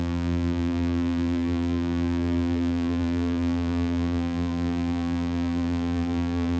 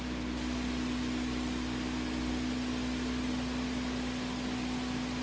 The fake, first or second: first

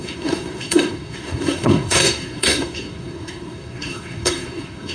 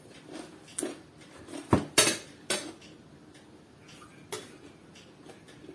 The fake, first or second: first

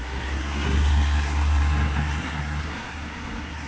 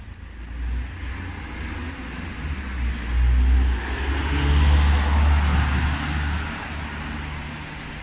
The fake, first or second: first